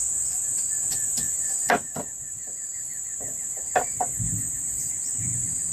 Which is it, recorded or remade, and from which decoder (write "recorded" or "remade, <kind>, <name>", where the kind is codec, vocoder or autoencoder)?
recorded